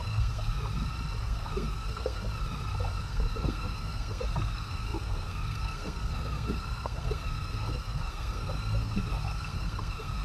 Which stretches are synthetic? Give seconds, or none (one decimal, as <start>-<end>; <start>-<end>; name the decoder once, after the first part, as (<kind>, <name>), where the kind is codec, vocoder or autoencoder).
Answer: 0.0-0.6 (codec, SNAC); 1.2-2.2; 3.0-10.2